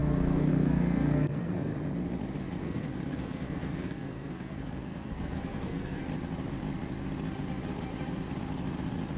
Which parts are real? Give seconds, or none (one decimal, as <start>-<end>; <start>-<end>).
1.7-2.6; 6.0-9.2